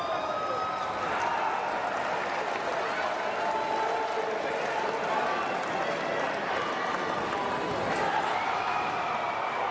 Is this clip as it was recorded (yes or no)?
yes